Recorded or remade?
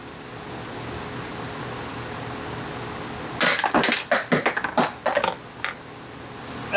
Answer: recorded